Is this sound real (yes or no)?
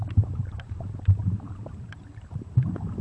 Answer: no